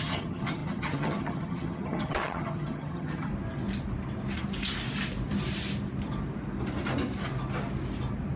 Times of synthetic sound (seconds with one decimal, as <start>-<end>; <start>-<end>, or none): 0.0-3.3